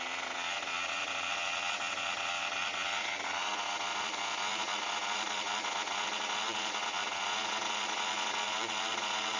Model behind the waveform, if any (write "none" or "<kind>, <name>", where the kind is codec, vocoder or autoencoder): vocoder, Vocos